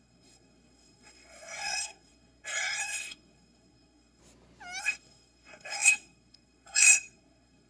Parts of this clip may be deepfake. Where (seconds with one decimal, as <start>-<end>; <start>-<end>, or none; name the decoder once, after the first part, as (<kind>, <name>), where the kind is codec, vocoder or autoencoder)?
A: 0.0-4.2 (codec, SNAC); 4.8-7.7